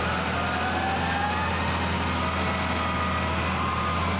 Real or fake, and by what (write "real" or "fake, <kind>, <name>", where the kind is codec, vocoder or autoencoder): real